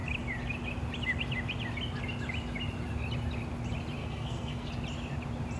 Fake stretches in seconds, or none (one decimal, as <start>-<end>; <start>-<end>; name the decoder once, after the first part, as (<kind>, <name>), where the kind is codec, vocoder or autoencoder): 4.0-4.7 (codec, SNAC)